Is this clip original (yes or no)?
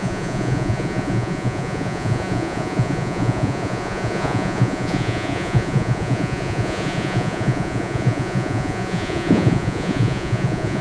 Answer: no